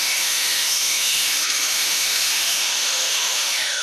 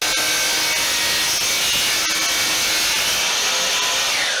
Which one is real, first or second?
second